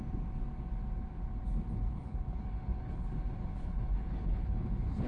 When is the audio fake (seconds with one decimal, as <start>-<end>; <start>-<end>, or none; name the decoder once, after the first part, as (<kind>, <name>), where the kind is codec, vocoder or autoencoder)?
1.9-5.1 (codec, HILCodec)